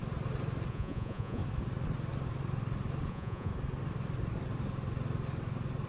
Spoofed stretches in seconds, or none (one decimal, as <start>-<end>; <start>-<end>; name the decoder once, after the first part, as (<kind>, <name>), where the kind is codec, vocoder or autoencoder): 0.7-1.4 (vocoder, Vocos); 3.1-3.5